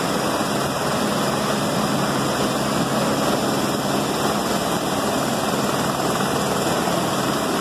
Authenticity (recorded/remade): recorded